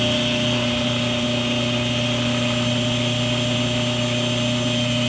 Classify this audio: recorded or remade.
recorded